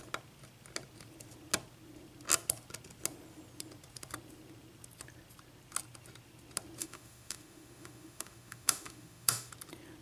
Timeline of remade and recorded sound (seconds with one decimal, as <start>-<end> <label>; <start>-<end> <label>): 0.0-6.8 recorded; 6.8-9.5 remade; 9.5-10.0 recorded